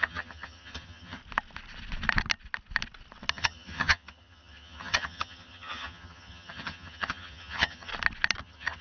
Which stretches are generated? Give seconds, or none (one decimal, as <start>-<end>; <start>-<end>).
0.0-1.2; 3.3-7.9; 8.4-8.8